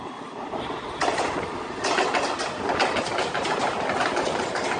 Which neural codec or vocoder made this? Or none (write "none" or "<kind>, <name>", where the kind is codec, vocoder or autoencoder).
none